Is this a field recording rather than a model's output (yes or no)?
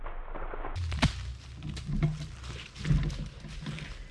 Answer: yes